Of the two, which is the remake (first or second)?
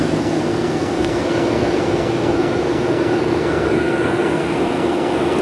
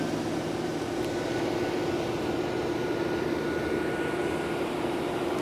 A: first